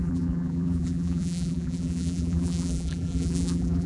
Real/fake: fake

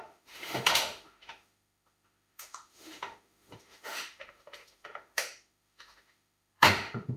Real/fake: fake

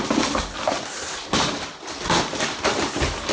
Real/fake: fake